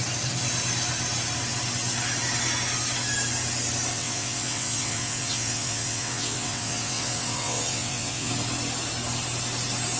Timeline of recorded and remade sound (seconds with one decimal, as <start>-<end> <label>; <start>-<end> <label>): 0.0-3.9 recorded; 3.9-8.3 remade; 8.3-10.0 recorded